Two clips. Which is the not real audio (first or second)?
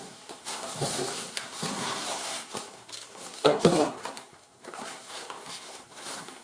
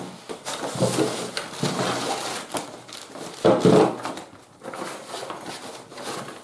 first